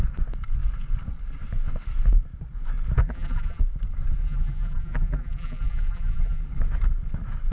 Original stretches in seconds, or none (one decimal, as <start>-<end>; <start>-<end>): 0.0-3.0; 3.6-4.2; 6.4-7.5